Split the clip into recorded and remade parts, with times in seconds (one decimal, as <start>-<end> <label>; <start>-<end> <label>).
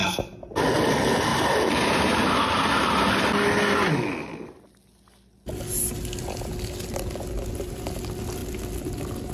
0.0-1.3 recorded; 1.3-2.3 remade; 2.3-9.3 recorded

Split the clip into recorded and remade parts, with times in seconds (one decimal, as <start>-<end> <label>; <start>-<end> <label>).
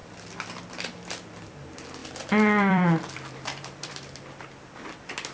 0.0-2.0 recorded; 2.0-4.4 remade; 4.4-5.3 recorded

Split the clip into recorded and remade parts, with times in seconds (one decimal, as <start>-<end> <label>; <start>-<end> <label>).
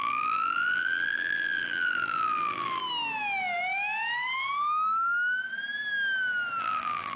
0.0-2.8 remade; 2.8-6.6 recorded; 6.6-7.2 remade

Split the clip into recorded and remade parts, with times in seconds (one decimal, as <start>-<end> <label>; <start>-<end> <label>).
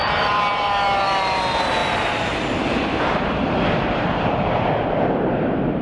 0.0-0.6 remade; 0.6-1.8 recorded; 1.8-5.3 remade; 5.3-5.8 recorded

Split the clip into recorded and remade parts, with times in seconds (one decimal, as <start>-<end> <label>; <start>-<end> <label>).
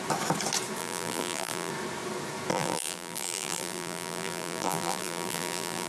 0.0-0.8 recorded; 0.8-1.7 remade; 1.7-2.5 recorded; 2.5-5.9 remade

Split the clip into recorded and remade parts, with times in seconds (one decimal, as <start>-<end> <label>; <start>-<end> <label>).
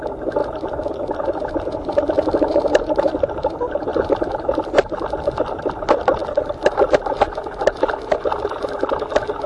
0.0-0.4 recorded; 0.4-2.0 remade; 2.0-9.5 recorded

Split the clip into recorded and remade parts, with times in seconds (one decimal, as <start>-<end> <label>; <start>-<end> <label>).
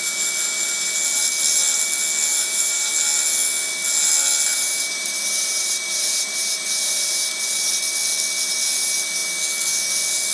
0.0-2.3 recorded; 2.3-2.9 remade; 2.9-4.5 recorded; 4.5-7.7 remade; 7.7-10.3 recorded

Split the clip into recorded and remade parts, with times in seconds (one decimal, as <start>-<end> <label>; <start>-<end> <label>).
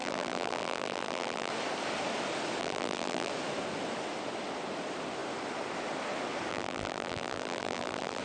0.0-1.5 remade; 1.5-2.6 recorded; 2.6-3.3 remade; 3.3-6.5 recorded; 6.5-8.2 remade